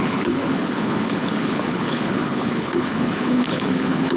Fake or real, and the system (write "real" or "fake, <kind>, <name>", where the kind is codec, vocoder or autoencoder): fake, codec, HILCodec